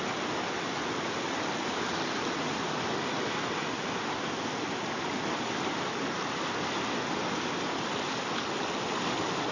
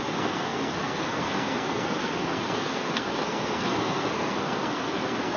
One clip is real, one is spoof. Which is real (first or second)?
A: first